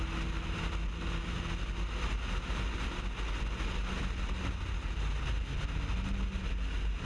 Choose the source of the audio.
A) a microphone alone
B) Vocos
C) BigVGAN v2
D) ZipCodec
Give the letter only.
A